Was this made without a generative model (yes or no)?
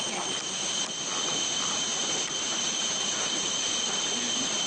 yes